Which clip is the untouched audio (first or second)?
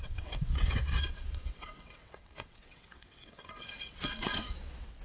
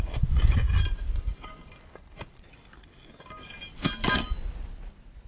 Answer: second